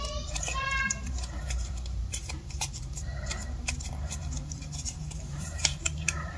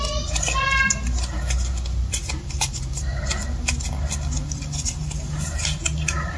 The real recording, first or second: second